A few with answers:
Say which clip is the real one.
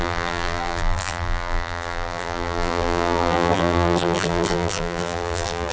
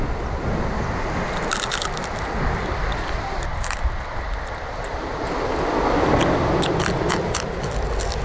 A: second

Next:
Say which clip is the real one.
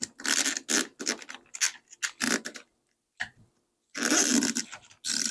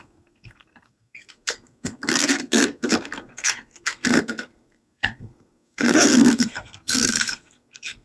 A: first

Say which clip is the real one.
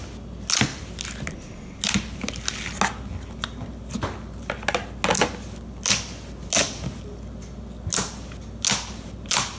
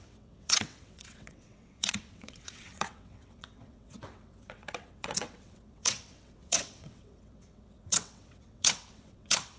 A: first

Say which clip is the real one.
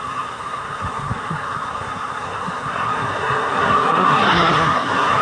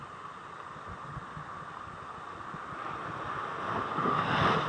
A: second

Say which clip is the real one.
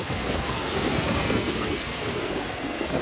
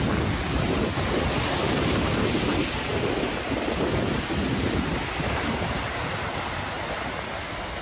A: second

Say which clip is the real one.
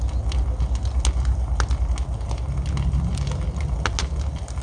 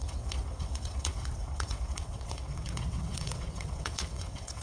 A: first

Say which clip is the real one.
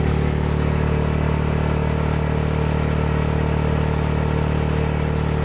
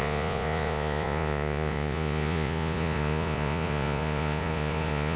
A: first